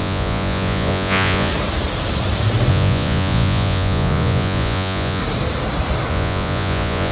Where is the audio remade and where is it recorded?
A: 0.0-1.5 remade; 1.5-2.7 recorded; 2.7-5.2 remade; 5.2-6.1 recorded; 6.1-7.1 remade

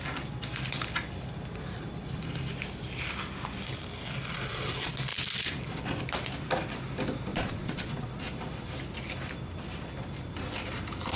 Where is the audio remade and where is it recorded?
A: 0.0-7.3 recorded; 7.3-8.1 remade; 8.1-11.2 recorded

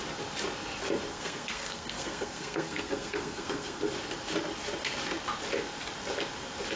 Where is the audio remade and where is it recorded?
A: 0.0-1.1 recorded; 1.1-3.8 remade; 3.8-6.8 recorded

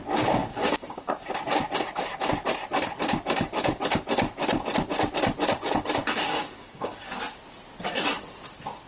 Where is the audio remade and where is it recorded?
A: 0.0-0.4 recorded; 0.4-1.1 remade; 1.1-6.0 recorded; 6.0-7.1 remade; 7.1-8.9 recorded

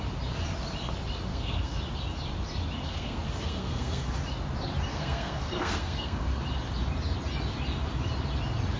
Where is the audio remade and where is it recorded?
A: 0.0-1.3 recorded; 1.3-1.8 remade; 1.8-2.8 recorded; 2.8-4.1 remade; 4.1-4.9 recorded; 4.9-6.4 remade; 6.4-8.8 recorded